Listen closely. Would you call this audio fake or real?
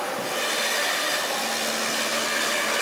real